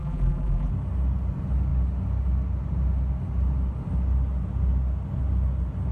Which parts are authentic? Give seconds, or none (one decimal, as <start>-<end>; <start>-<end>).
0.7-5.9